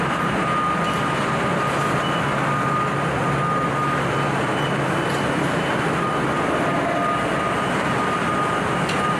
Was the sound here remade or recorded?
recorded